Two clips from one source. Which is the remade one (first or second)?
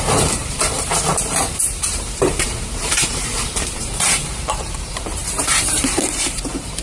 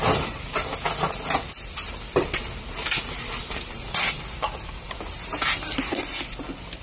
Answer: first